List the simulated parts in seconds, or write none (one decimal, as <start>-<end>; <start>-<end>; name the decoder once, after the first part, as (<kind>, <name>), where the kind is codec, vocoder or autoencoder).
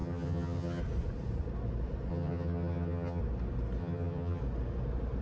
0.0-0.8 (vocoder, HiFi-GAN); 2.1-3.2; 3.8-4.4